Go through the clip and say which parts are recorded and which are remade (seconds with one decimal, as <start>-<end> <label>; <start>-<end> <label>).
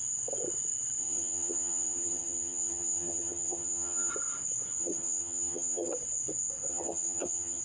0.0-1.0 recorded; 1.0-4.1 remade; 4.1-4.8 recorded; 4.8-5.9 remade; 5.9-6.7 recorded; 6.7-7.6 remade